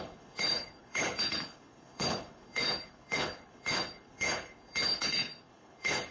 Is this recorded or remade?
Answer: remade